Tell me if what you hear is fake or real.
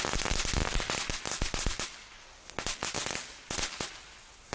real